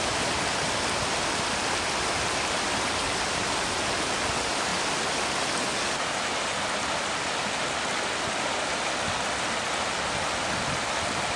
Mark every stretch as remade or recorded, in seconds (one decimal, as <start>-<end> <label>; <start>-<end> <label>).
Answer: 0.0-11.4 recorded